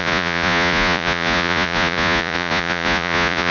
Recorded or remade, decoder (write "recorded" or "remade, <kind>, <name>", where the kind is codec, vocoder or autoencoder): remade, vocoder, Vocos